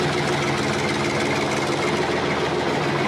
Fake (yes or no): no